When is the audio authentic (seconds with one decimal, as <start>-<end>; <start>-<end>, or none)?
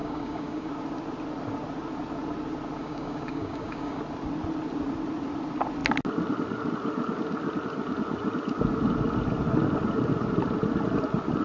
0.7-2.8; 4.0-11.4